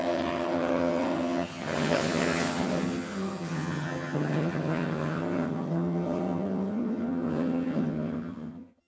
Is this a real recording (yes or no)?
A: no